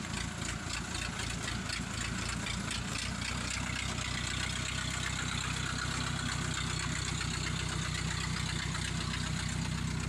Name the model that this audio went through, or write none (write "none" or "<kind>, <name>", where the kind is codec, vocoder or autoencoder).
none